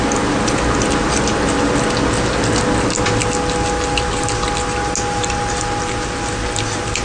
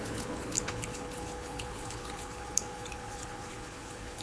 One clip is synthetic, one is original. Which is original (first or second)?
first